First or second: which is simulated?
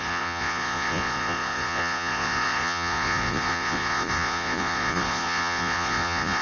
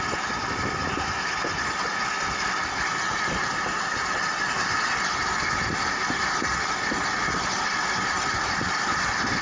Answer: first